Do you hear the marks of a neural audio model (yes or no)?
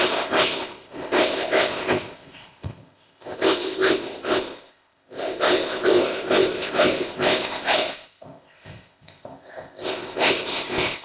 yes